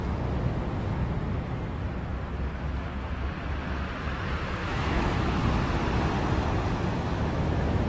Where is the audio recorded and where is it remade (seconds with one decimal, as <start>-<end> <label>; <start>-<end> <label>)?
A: 0.0-4.6 recorded; 4.6-5.4 remade; 5.4-6.9 recorded; 6.9-7.9 remade